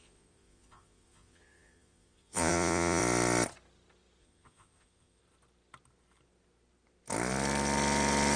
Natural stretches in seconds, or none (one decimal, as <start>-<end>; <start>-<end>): 3.0-4.2; 5.2-8.4